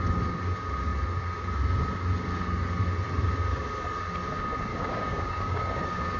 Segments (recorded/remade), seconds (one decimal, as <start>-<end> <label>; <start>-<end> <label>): 0.0-4.7 recorded; 4.7-6.2 remade